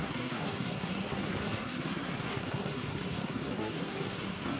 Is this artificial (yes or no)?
yes